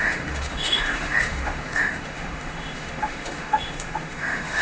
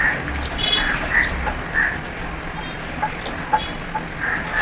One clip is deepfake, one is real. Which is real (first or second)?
second